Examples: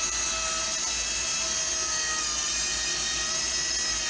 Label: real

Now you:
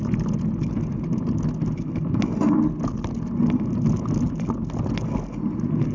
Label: real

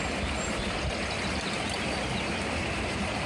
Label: real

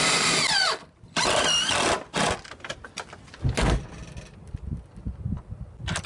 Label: real